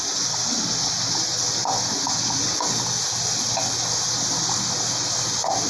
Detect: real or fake real